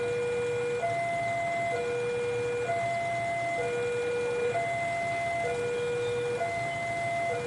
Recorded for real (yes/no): yes